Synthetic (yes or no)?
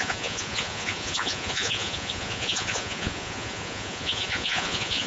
yes